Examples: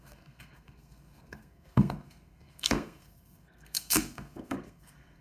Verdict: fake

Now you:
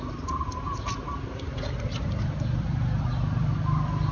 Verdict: real